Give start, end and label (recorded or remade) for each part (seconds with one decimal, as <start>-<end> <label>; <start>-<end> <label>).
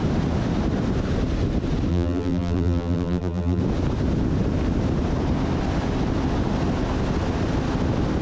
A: 0.0-1.9 recorded; 1.9-3.6 remade; 3.6-8.2 recorded